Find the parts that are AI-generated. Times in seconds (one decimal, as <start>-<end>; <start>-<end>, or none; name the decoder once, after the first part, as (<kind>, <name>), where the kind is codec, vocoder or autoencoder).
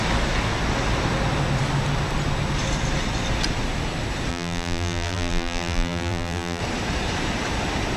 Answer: 4.3-6.6 (vocoder, BigVGAN v2)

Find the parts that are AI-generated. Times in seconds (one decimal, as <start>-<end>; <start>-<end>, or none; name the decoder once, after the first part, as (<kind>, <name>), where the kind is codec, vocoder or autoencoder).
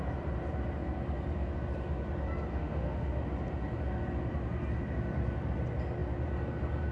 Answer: 2.5-3.2 (autoencoder, DAC-VAE)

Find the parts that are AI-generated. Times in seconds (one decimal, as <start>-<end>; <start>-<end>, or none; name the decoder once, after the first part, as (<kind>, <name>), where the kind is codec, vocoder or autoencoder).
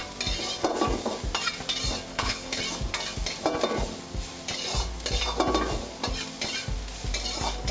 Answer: 2.1-2.6 (codec, HILCodec)